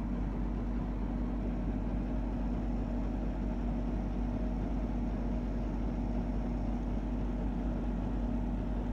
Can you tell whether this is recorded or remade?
recorded